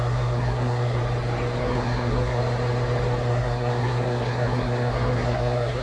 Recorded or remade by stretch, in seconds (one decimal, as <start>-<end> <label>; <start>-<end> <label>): 0.0-1.0 remade; 1.0-1.6 recorded; 1.6-2.4 remade; 2.4-3.3 recorded; 3.3-5.8 remade